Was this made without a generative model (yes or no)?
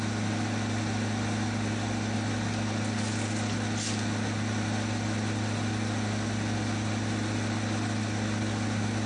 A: yes